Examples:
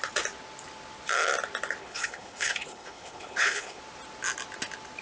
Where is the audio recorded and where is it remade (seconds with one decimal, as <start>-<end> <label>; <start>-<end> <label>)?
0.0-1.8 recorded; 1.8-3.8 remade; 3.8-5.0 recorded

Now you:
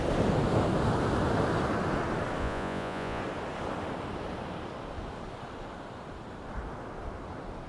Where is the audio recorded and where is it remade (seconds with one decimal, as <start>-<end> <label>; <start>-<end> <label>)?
0.0-2.4 recorded; 2.4-3.2 remade; 3.2-7.7 recorded

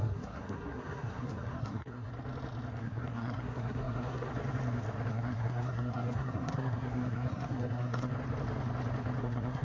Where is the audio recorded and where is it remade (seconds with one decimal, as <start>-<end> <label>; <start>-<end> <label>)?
0.0-2.1 remade; 2.1-2.8 recorded; 2.8-4.3 remade; 4.3-5.1 recorded; 5.1-8.1 remade; 8.1-9.2 recorded; 9.2-9.6 remade

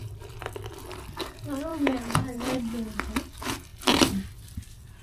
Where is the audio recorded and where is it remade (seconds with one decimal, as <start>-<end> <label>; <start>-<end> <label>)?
0.0-1.7 recorded; 1.7-2.6 remade; 2.6-5.0 recorded